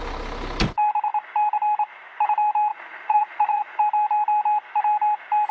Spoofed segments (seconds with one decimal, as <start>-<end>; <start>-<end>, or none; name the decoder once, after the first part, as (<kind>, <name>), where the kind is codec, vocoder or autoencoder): 2.7-3.8 (vocoder, Vocos)